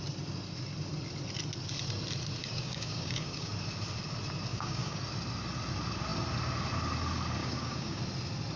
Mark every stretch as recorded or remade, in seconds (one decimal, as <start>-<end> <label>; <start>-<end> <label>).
0.0-2.4 recorded; 2.4-3.5 remade; 3.5-4.5 recorded; 4.5-5.0 remade; 5.0-7.4 recorded; 7.4-8.0 remade; 8.0-8.6 recorded